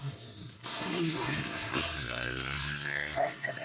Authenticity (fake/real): fake